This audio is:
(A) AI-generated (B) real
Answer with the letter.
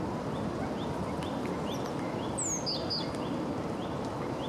B